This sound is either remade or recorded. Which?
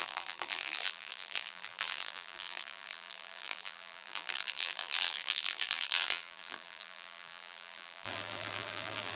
remade